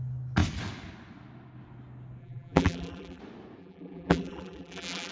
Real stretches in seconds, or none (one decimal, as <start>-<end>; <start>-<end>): 0.0-2.2; 3.2-3.6